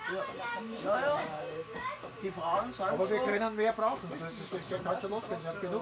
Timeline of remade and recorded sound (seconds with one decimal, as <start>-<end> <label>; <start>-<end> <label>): 0.0-0.5 recorded; 0.5-2.3 remade; 2.3-3.3 recorded; 3.3-4.5 remade; 4.5-5.8 recorded